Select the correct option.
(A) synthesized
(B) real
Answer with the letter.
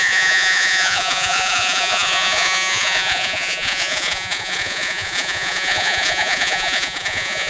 A